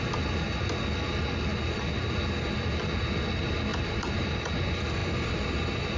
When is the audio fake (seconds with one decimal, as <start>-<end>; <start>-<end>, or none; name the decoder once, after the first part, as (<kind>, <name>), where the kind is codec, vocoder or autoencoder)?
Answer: 1.5-2.1 (vocoder, BigVGAN v2); 3.7-4.5